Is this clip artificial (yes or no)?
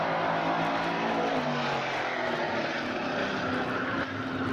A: no